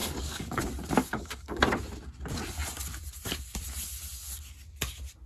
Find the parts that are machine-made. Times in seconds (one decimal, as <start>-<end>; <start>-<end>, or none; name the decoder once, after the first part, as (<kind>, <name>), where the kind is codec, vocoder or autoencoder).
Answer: 0.0-0.6 (codec, DAC); 1.0-1.6